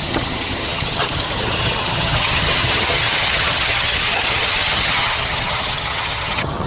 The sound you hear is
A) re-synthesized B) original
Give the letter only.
A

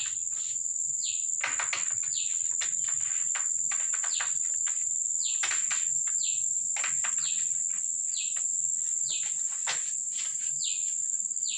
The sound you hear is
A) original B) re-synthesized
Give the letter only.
A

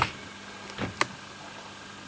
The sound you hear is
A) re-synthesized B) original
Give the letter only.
B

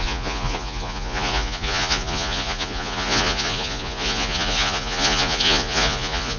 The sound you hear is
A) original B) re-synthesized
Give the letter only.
B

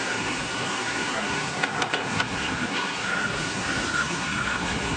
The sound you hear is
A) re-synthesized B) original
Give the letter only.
A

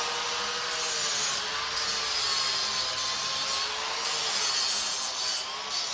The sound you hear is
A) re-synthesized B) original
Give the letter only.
B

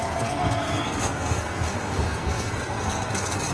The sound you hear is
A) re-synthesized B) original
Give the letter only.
A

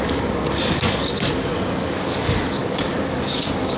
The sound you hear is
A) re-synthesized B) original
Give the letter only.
A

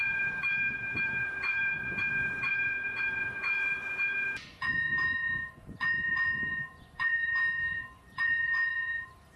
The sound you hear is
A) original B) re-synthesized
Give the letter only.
B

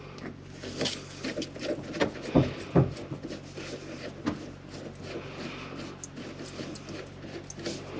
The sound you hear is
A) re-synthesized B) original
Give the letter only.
B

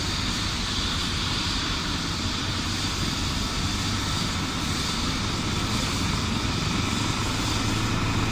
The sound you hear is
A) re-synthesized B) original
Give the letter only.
B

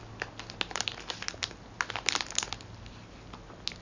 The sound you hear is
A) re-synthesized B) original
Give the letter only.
B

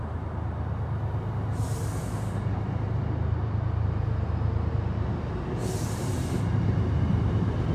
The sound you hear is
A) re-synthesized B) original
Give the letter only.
B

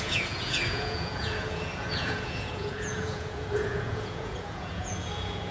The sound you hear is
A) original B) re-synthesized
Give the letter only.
B